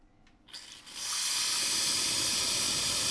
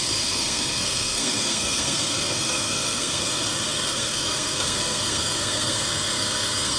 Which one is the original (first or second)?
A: first